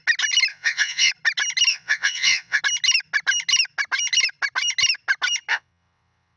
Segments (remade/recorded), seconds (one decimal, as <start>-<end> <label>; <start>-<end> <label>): 0.0-0.5 recorded; 0.5-1.1 remade; 1.1-1.7 recorded; 1.7-2.6 remade; 2.6-5.5 recorded; 5.5-6.4 remade